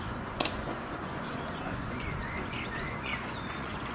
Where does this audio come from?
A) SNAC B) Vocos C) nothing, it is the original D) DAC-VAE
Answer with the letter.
B